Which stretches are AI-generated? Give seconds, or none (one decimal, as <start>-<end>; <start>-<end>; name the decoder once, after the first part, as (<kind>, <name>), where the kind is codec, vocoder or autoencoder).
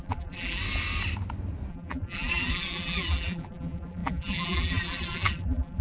0.0-0.6 (vocoder, BigVGAN v2); 1.7-5.8